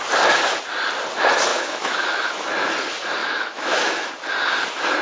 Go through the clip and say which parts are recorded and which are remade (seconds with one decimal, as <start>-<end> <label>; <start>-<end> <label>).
0.0-1.5 recorded; 1.5-2.5 remade; 2.5-3.2 recorded; 3.2-4.1 remade; 4.1-5.0 recorded